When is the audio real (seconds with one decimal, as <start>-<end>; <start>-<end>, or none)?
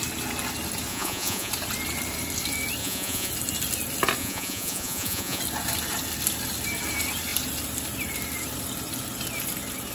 0.0-0.9; 1.5-2.8; 3.3-4.2; 5.4-9.9